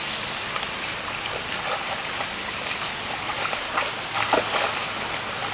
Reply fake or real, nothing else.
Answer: real